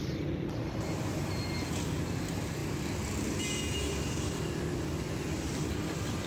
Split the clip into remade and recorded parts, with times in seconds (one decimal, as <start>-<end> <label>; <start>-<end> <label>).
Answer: 0.0-6.3 recorded